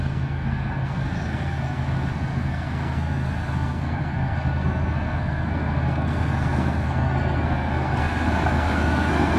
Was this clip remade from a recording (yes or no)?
yes